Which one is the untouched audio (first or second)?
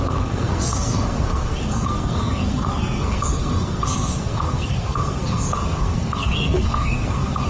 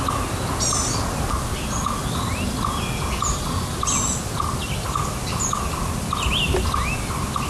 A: second